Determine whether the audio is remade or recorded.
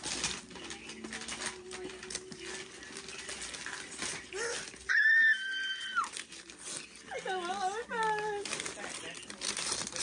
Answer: recorded